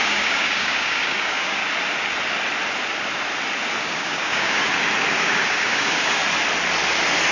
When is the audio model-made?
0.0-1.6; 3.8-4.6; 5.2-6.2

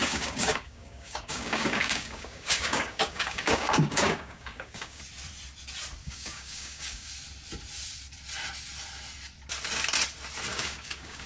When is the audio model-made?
0.0-5.0; 6.0-7.1; 10.5-11.3

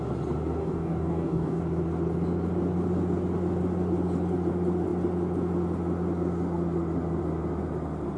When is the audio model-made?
0.6-1.6